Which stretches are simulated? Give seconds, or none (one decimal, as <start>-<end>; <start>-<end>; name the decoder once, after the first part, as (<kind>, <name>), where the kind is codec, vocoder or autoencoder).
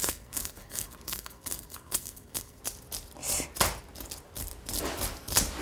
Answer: 0.0-2.6 (codec, SNAC)